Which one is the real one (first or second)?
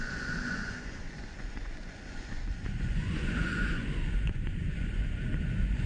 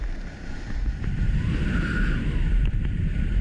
second